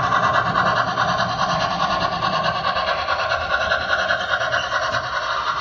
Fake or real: real